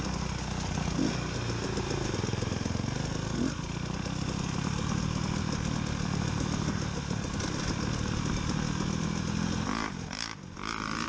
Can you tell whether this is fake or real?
real